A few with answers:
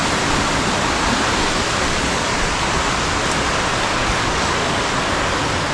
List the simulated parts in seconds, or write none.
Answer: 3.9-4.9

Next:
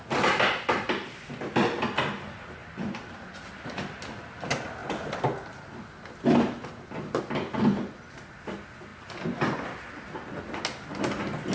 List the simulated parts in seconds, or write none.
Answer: none

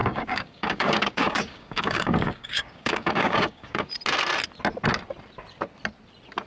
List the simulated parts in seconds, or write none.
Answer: 0.0-3.9

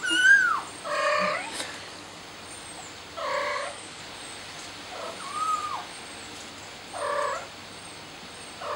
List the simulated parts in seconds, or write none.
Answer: 1.0-2.2; 3.5-4.0

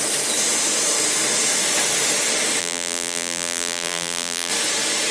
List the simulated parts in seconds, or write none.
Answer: 2.6-4.5